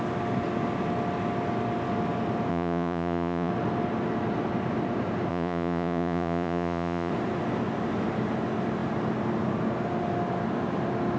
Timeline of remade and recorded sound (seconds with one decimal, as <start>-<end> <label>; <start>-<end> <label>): 0.0-2.5 recorded; 2.5-3.5 remade; 3.5-5.3 recorded; 5.3-7.1 remade; 7.1-11.2 recorded